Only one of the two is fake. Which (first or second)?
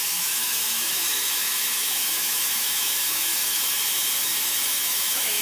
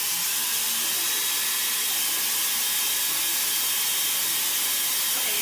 first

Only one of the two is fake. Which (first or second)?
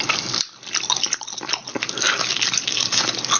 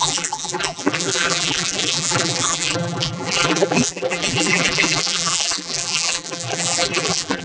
second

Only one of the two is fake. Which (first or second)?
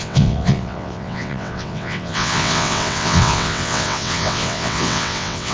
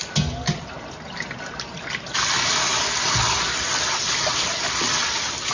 first